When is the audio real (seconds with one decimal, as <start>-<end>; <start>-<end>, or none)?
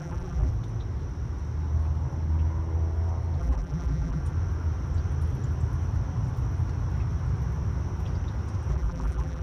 0.5-3.4; 4.2-8.7